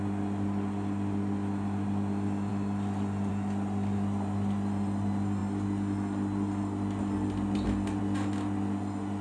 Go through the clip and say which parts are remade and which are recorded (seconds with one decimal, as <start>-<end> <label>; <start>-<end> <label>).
0.0-9.2 recorded